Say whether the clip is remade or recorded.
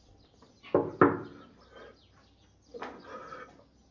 recorded